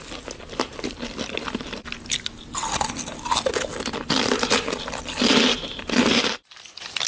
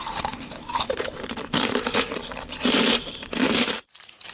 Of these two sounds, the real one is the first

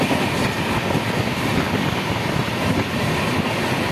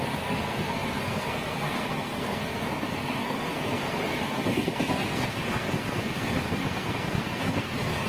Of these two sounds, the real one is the first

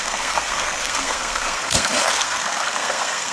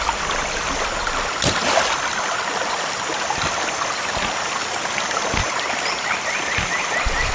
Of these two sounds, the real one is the second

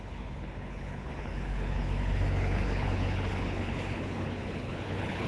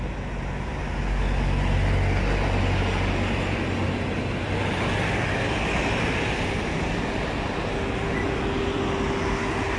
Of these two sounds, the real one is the second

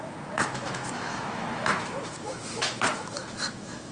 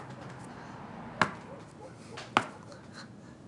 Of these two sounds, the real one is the second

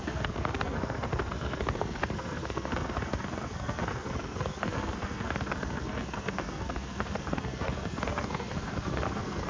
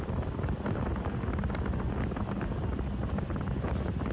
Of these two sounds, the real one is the second